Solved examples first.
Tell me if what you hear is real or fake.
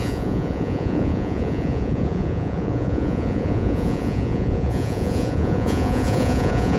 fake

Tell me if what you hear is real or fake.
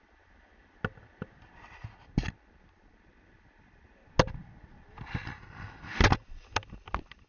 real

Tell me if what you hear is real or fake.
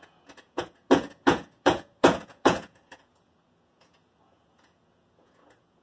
fake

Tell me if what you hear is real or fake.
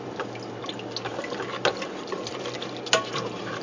real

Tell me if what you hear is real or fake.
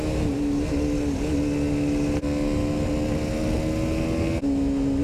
real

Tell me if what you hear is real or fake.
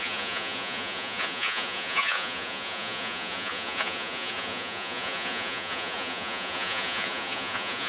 fake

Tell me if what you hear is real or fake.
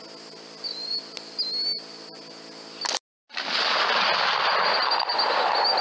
real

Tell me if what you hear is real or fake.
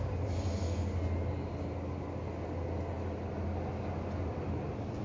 real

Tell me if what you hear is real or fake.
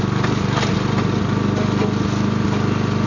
real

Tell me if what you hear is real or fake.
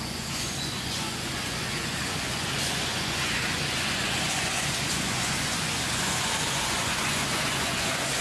fake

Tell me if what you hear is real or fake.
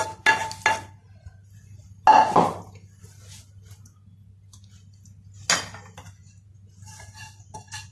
real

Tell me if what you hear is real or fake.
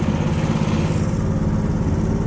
real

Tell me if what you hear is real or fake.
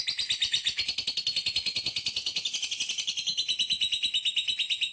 real